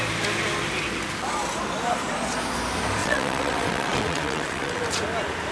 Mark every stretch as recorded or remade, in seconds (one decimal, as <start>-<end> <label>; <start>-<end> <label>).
0.0-3.0 recorded; 3.0-4.8 remade; 4.8-5.5 recorded